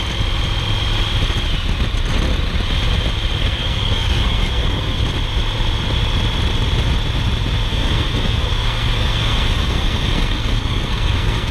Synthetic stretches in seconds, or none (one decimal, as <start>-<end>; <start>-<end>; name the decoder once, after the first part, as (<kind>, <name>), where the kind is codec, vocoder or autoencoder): 3.4-5.0 (codec, SNAC); 7.7-11.5